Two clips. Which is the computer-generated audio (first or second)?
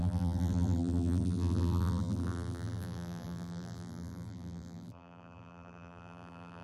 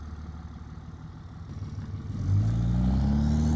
first